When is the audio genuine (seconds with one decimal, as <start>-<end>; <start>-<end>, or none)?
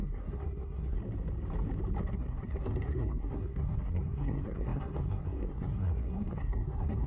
1.0-2.0